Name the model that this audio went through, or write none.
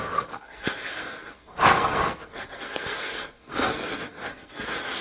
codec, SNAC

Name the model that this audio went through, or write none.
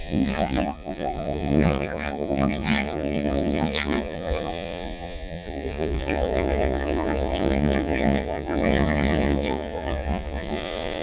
vocoder, Vocos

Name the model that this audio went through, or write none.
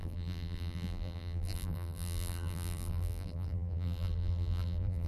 vocoder, BigVGAN v2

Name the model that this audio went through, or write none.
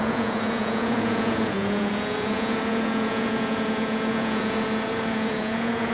vocoder, Vocos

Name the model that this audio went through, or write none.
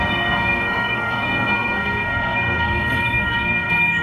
codec, SNAC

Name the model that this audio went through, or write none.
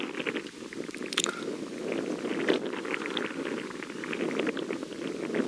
none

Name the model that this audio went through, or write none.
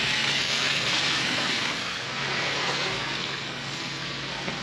codec, SNAC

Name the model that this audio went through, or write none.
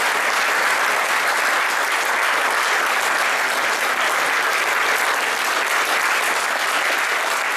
none